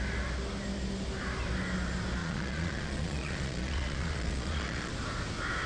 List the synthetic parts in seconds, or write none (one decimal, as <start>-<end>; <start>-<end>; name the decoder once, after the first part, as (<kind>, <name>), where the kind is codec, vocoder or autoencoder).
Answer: 2.2-4.9 (vocoder, Vocos)

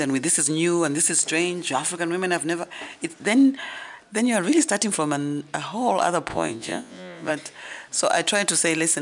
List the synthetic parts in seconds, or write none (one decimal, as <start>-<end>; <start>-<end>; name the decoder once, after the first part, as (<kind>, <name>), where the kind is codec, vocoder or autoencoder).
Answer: 6.3-7.3 (vocoder, Vocos)

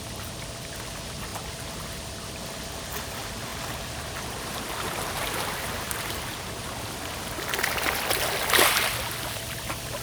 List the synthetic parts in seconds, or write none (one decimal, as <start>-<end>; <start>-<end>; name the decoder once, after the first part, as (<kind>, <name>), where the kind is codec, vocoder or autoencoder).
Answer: none

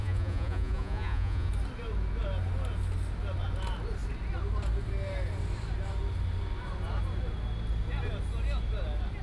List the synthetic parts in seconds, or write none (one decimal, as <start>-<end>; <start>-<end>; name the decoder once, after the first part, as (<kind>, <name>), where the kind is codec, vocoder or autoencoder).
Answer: 0.0-1.5 (vocoder, Vocos)

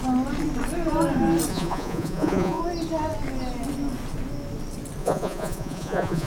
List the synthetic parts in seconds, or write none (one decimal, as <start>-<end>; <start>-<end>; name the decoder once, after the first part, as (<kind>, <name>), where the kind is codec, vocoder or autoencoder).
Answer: 1.5-2.6 (vocoder, Vocos); 5.0-6.3

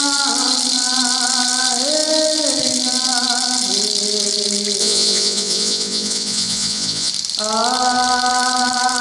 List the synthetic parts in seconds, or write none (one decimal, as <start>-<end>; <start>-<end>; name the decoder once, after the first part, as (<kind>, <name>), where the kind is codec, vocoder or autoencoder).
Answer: 4.8-7.1 (vocoder, Vocos)

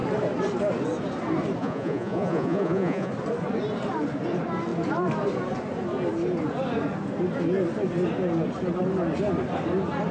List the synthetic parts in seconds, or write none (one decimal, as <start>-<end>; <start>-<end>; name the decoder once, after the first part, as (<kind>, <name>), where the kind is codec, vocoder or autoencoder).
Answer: 1.6-3.1 (vocoder, Vocos)

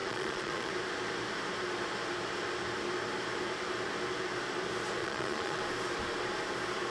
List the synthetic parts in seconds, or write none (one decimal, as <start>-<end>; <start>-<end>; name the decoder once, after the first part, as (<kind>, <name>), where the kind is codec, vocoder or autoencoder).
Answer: 0.0-0.7 (vocoder, Vocos); 5.0-5.6